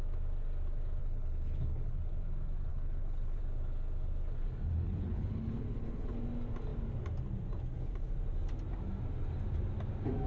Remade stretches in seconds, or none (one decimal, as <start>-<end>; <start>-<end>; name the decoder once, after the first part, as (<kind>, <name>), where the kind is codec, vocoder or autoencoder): 1.0-2.0 (codec, HILCodec); 2.7-3.4; 4.7-6.2